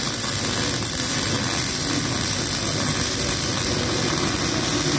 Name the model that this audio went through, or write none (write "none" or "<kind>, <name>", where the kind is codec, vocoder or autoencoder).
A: none